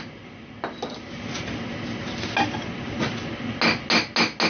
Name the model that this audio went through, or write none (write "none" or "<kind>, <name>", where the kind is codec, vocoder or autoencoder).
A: none